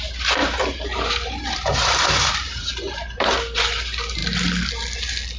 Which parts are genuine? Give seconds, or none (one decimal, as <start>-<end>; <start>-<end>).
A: 0.0-0.4; 3.6-5.4

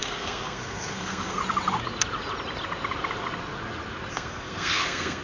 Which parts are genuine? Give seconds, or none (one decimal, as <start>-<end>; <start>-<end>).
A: 1.4-4.1

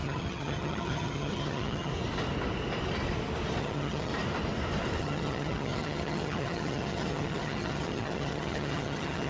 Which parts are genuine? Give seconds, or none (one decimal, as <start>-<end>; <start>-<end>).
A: 1.9-3.6; 4.1-5.0

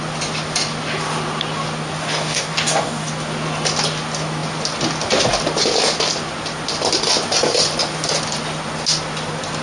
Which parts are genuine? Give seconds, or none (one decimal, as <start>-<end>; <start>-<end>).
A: 0.0-2.0; 3.1-9.6

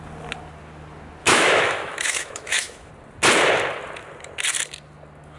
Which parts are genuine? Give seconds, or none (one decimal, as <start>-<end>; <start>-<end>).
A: 0.0-1.2; 2.9-5.4